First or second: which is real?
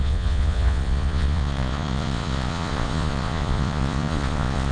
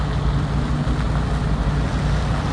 second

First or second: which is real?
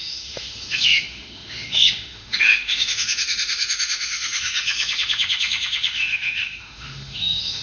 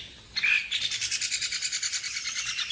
second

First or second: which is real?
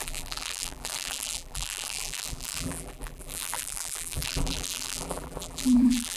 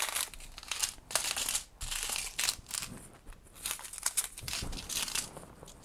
second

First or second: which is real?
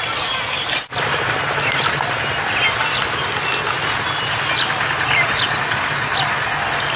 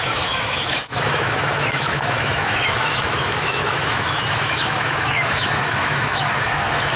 first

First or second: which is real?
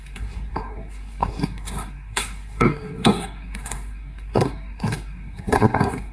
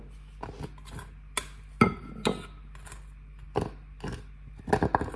second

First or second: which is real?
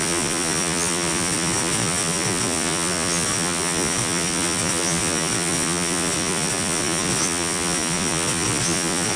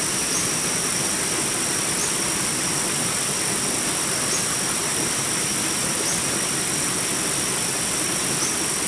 second